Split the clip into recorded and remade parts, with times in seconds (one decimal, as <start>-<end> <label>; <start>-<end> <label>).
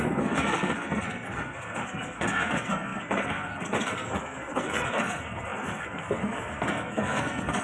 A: 0.0-7.6 remade